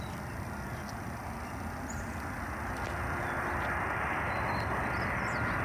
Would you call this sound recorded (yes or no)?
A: yes